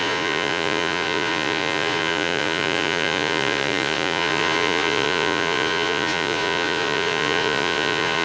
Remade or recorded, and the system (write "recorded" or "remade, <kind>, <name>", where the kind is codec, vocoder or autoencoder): remade, vocoder, Vocos